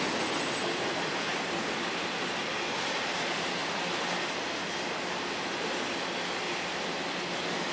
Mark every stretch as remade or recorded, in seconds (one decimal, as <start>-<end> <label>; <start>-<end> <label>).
0.0-1.3 recorded; 1.3-2.0 remade; 2.0-7.7 recorded